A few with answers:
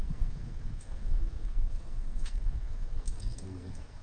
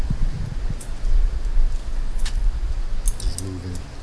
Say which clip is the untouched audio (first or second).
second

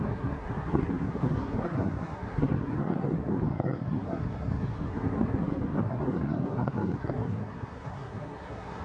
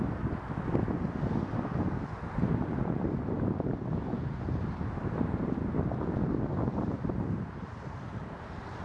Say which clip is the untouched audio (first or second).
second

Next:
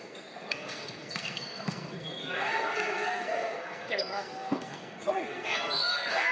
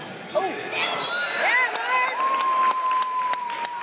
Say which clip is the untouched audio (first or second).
second